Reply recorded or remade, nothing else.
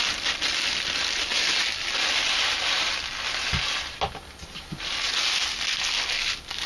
recorded